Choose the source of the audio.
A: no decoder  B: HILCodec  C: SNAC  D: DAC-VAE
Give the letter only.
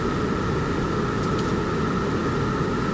A